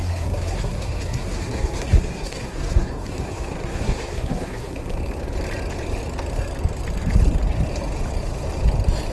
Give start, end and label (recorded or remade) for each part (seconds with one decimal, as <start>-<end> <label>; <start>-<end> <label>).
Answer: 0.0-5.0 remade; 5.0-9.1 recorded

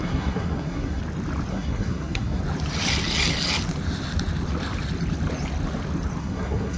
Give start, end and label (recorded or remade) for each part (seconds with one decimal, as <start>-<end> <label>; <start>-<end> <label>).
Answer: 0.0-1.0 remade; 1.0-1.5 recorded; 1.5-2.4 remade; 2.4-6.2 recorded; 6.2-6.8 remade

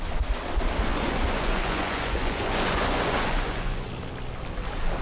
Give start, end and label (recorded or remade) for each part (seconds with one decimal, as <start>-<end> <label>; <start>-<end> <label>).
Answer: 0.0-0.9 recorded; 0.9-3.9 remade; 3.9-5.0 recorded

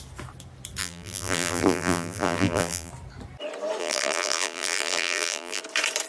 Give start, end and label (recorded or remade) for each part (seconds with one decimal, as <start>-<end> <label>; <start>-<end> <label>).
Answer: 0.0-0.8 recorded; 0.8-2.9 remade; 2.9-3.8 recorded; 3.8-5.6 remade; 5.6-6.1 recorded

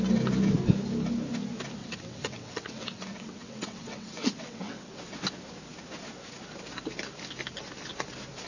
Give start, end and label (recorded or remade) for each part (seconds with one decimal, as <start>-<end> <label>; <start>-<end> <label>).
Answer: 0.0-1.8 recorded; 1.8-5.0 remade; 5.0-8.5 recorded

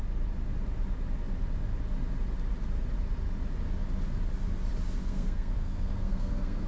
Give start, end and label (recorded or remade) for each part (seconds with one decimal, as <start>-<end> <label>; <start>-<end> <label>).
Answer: 0.0-5.0 recorded; 5.0-6.7 remade